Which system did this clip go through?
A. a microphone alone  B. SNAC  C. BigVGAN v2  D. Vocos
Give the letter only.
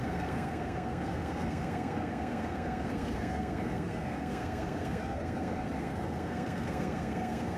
B